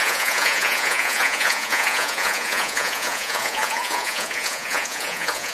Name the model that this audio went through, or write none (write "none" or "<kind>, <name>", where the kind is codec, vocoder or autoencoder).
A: vocoder, Vocos